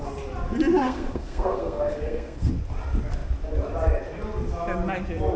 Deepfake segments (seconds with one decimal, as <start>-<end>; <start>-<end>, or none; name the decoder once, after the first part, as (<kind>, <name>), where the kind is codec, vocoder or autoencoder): 0.7-2.5 (codec, SNAC)